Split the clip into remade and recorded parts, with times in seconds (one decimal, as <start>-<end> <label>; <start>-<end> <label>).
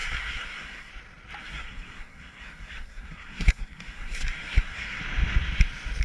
0.0-0.9 remade; 0.9-1.4 recorded; 1.4-5.0 remade; 5.0-6.0 recorded